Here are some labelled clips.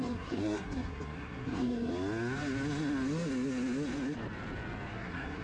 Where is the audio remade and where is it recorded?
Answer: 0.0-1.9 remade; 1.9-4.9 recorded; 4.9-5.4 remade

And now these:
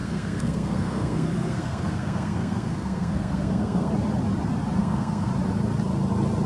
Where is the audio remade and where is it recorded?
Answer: 0.0-3.9 remade; 3.9-4.8 recorded; 4.8-5.3 remade; 5.3-6.5 recorded

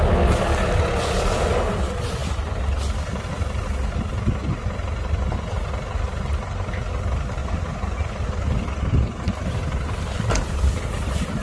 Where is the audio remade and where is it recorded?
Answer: 0.0-7.4 recorded; 7.4-8.1 remade; 8.1-11.4 recorded

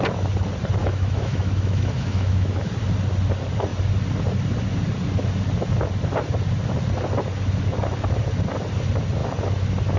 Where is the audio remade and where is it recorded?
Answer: 0.0-0.8 recorded; 0.8-2.7 remade; 2.7-10.0 recorded

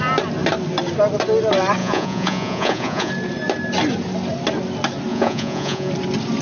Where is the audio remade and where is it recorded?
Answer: 0.0-1.8 recorded; 1.8-3.1 remade; 3.1-5.1 recorded; 5.1-5.9 remade; 5.9-6.4 recorded

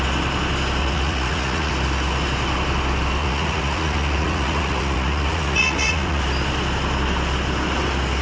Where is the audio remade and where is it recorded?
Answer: 0.0-0.8 recorded; 0.8-1.7 remade; 1.7-3.2 recorded; 3.2-6.2 remade; 6.2-8.2 recorded